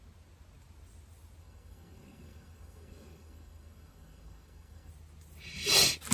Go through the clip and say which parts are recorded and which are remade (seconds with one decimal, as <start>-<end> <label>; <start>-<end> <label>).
0.0-1.4 recorded; 1.4-4.9 remade; 4.9-6.1 recorded